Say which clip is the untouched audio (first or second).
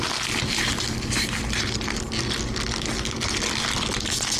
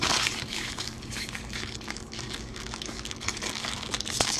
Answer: first